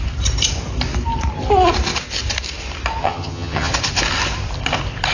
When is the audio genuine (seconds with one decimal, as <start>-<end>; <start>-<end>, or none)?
0.0-3.0; 3.7-5.1

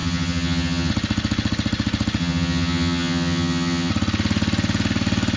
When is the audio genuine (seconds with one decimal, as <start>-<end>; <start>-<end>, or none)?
0.9-2.2; 3.9-5.4